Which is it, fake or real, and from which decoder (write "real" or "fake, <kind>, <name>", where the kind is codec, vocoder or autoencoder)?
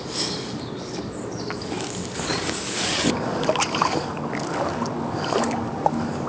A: fake, codec, DAC